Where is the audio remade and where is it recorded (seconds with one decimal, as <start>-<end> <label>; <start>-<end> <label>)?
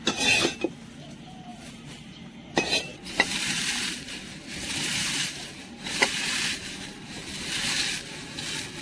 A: 0.0-1.5 recorded; 1.5-4.1 remade; 4.1-4.5 recorded; 4.5-7.8 remade; 7.8-8.8 recorded